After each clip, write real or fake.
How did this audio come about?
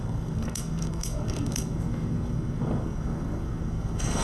fake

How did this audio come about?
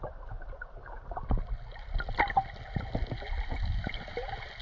real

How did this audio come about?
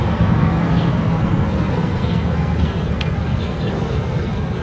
fake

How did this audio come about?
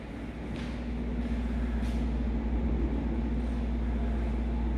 real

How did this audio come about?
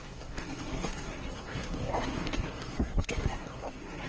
fake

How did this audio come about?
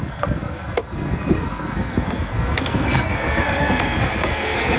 fake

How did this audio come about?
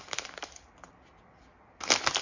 real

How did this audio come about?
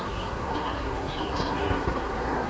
fake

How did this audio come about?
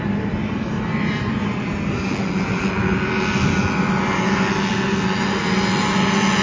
real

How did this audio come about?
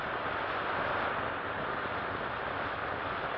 real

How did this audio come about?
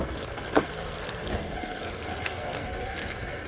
fake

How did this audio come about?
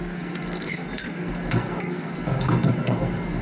fake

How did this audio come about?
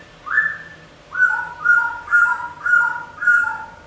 real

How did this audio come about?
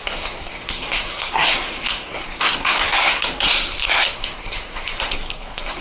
fake